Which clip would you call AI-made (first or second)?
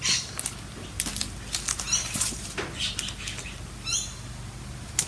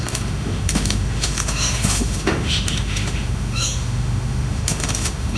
second